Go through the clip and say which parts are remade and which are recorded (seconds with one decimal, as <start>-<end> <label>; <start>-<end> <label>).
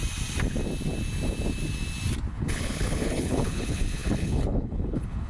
0.0-2.3 recorded; 2.3-5.3 remade